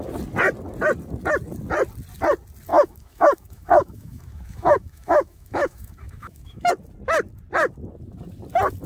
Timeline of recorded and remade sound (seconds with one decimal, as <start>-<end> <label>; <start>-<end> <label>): 0.0-2.7 recorded; 2.7-6.7 remade; 6.7-8.9 recorded